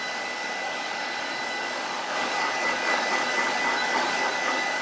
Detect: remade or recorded remade